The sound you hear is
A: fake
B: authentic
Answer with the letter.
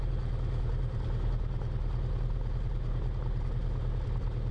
B